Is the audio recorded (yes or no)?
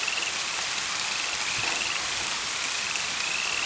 yes